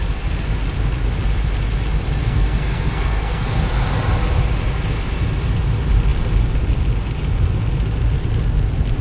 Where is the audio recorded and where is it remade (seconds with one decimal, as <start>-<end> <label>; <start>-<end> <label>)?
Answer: 0.0-2.2 recorded; 2.2-3.6 remade; 3.6-9.0 recorded